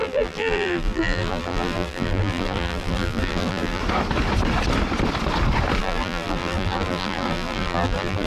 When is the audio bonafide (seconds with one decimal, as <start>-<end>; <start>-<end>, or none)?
3.8-5.8